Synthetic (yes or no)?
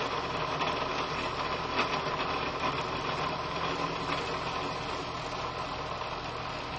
no